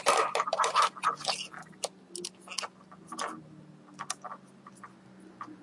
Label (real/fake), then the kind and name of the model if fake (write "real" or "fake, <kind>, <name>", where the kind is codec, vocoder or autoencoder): real